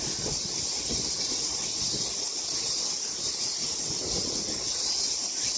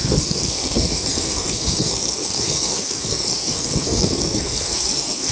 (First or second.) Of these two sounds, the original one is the first